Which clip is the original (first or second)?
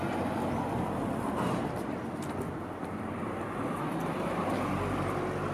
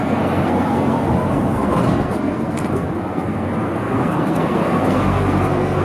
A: first